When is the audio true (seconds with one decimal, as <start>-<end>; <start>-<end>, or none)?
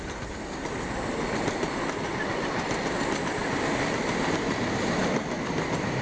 0.0-6.0